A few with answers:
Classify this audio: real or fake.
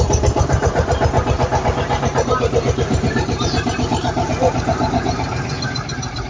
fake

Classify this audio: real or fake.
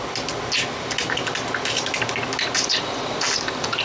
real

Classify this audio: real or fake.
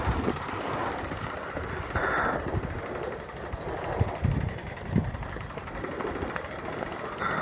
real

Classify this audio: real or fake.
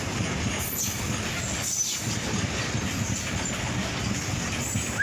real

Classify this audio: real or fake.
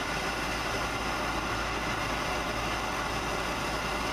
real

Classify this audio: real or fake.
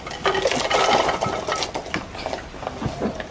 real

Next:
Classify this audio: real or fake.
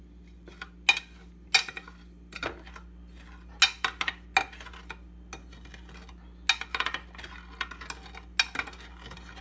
real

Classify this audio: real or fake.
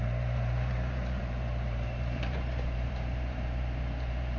fake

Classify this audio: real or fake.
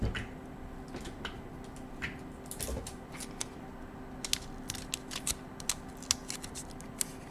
real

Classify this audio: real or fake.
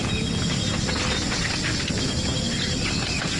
real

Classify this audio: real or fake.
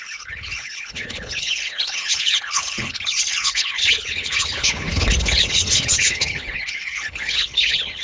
fake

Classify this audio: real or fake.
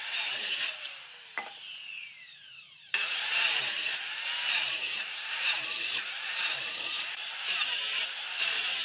fake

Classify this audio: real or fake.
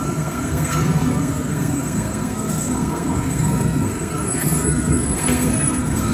fake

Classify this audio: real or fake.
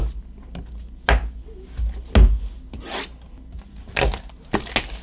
real